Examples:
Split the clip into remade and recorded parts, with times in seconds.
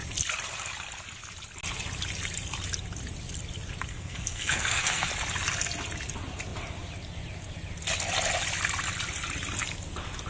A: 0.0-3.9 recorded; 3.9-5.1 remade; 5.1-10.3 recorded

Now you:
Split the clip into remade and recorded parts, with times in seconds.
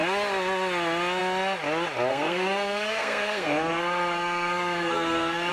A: 0.0-2.1 recorded; 2.1-5.5 remade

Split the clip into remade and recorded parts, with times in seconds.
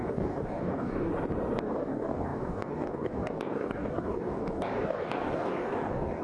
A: 0.0-1.1 remade; 1.1-1.6 recorded; 1.6-6.2 remade